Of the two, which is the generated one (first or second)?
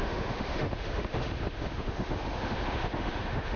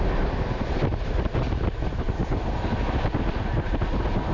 first